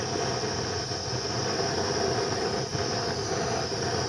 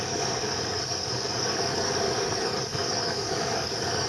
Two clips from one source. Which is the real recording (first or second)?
first